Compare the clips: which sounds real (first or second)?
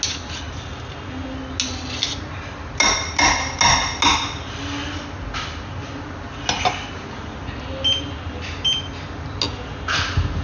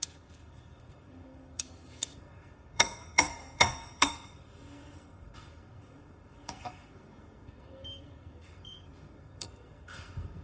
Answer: first